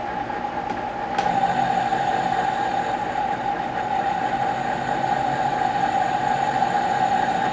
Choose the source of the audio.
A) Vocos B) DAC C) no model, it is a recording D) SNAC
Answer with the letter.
C